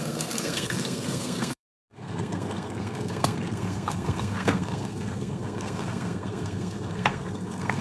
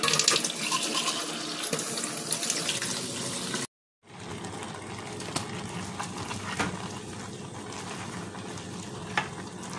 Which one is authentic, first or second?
second